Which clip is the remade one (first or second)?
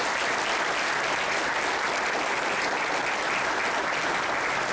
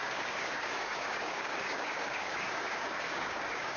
second